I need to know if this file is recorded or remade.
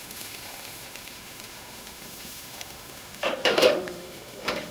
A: remade